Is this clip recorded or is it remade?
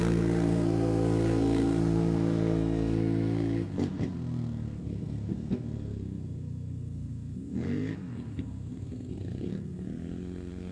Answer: remade